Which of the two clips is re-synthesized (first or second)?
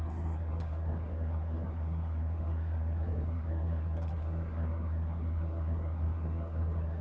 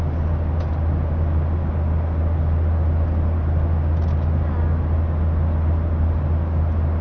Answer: first